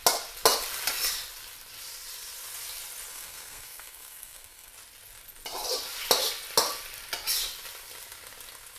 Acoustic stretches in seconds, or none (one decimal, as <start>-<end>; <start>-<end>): 0.0-3.1; 4.7-8.8